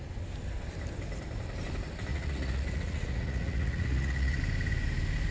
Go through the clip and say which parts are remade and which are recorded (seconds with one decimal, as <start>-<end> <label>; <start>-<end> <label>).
0.0-2.1 recorded; 2.1-4.4 remade; 4.4-5.3 recorded